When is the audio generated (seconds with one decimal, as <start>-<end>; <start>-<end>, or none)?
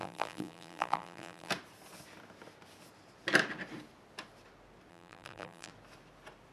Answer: 0.0-1.5; 4.9-5.7